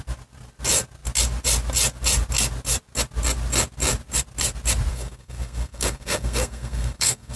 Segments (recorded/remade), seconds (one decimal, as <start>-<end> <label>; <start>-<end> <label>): 0.0-4.9 recorded; 4.9-7.4 remade